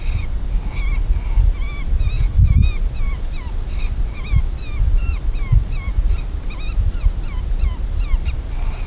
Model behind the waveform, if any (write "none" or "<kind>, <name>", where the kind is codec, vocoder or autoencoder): none